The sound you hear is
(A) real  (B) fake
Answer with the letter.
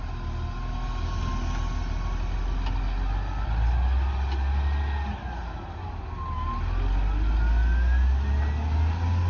A